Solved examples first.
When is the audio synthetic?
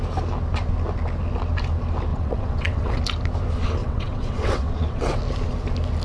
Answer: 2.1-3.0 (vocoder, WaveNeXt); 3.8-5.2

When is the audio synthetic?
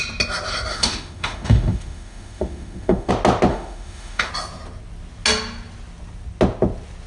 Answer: 0.7-3.1 (autoencoder, DAC-VAE); 3.5-4.3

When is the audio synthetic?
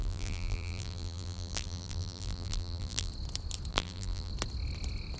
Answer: 0.0-3.1 (vocoder, BigVGAN v2); 3.7-4.3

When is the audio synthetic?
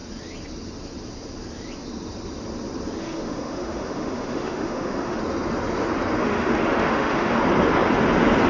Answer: 3.0-5.2 (autoencoder, DAC-VAE); 6.2-7.4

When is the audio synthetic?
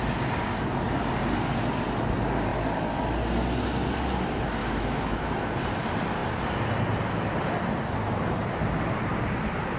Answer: 4.6-5.4 (autoencoder, DAC-VAE)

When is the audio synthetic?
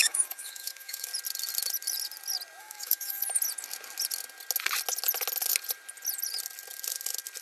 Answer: 0.0-1.1 (autoencoder, DAC-VAE); 2.6-3.2